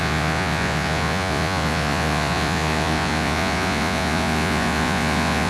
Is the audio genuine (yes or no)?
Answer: no